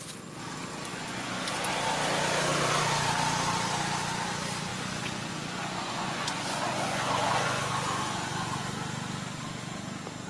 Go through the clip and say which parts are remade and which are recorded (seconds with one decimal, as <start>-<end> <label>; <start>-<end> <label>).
0.0-0.9 recorded; 0.9-1.7 remade; 1.7-4.7 recorded; 4.7-8.6 remade; 8.6-10.3 recorded